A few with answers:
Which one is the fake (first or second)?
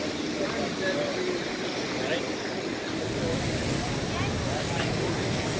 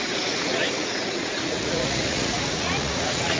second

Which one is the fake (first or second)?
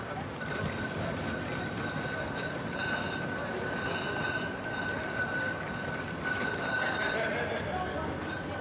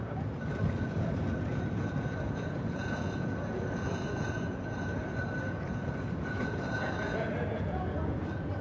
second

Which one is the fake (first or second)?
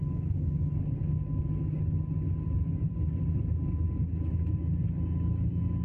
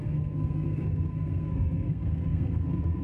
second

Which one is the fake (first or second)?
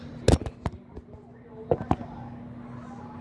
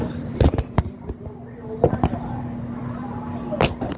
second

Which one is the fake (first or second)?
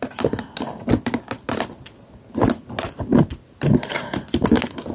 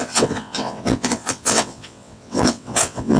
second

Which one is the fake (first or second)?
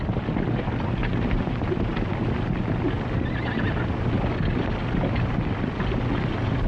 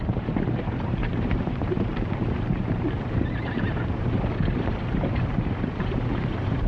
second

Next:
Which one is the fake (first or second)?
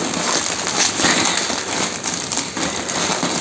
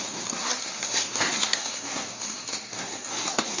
second